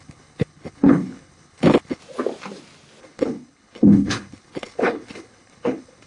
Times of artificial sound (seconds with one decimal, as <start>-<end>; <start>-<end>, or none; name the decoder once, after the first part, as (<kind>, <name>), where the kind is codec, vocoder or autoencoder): 0.0-2.0 (codec, HILCodec); 3.0-6.1